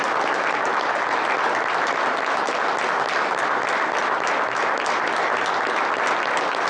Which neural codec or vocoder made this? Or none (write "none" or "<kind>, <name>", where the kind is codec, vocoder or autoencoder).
none